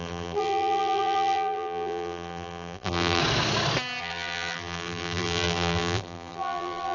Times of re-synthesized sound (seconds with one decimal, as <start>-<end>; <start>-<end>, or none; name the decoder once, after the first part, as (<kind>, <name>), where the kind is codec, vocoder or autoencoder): 0.0-3.2 (vocoder, BigVGAN v2); 4.0-6.9